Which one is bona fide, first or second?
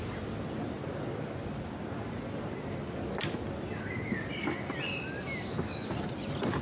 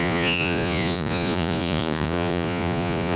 first